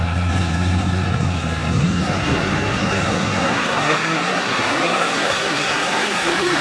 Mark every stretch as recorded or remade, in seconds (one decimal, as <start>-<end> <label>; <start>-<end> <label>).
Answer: 0.0-6.6 remade